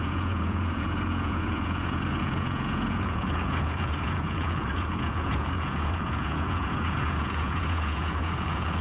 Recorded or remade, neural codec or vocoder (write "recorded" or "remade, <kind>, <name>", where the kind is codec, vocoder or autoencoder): remade, vocoder, Vocos